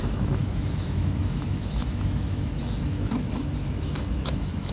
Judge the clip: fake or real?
fake